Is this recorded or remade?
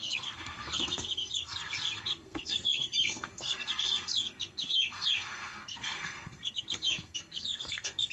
remade